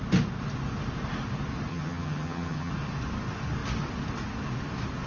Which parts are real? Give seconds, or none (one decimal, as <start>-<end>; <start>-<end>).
0.0-1.7; 2.7-5.1